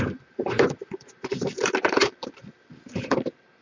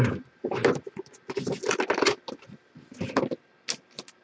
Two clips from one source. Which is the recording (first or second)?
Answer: second